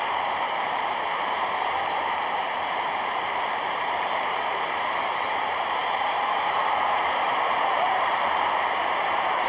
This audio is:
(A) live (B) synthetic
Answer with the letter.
B